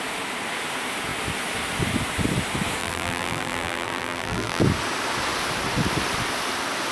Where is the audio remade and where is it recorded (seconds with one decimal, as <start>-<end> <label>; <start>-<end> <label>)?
0.0-2.8 recorded; 2.8-4.6 remade; 4.6-6.9 recorded